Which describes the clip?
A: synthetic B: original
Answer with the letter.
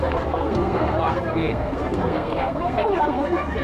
A